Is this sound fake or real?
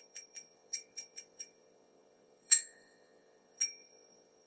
fake